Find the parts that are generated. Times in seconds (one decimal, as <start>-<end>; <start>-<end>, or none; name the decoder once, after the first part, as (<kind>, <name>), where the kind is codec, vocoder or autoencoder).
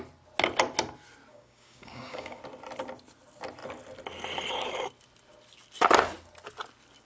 1.3-2.4 (codec, DAC)